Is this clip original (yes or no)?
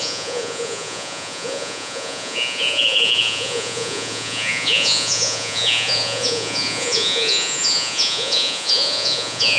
no